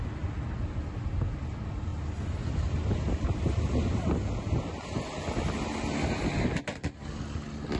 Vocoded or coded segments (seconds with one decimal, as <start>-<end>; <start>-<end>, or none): none